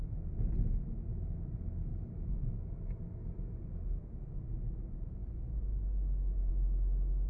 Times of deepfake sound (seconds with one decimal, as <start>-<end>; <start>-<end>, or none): none

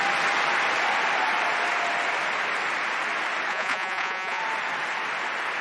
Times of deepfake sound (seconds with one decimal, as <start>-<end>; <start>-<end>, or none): 3.5-4.4

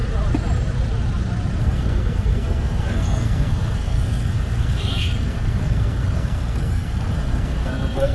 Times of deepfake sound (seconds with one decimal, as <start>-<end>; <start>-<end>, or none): 1.6-8.1

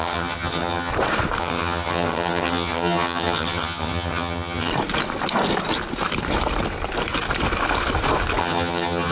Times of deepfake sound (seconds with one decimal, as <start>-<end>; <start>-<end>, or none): 0.0-0.9; 1.4-4.7; 8.4-9.1

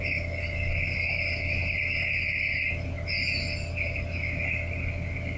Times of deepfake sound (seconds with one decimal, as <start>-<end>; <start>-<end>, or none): none

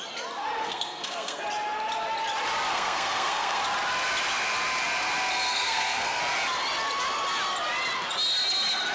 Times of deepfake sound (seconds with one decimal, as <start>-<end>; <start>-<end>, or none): 0.6-1.4; 2.7-3.6; 5.5-6.2

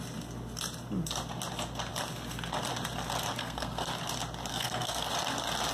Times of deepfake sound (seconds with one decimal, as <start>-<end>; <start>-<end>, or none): 3.4-3.9; 4.5-5.1